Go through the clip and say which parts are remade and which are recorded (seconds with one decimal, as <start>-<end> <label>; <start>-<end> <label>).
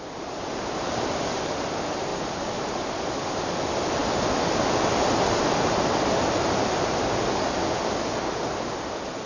0.0-9.3 recorded